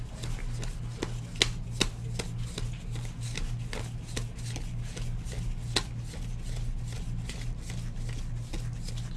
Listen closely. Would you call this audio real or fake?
real